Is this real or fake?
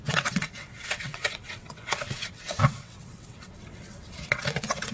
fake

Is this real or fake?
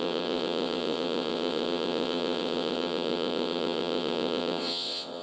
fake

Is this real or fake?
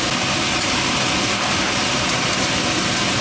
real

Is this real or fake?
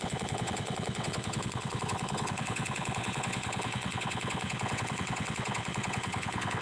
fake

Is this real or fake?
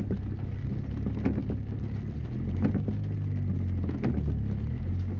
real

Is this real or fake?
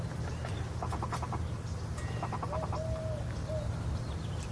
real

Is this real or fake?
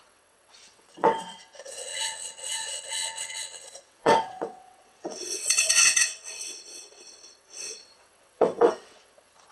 fake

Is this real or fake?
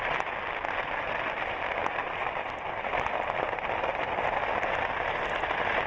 real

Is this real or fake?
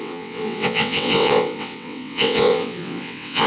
fake